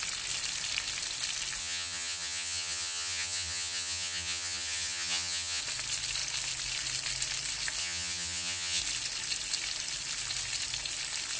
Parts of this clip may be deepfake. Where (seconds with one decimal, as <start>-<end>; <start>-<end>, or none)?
1.6-5.6; 7.8-8.8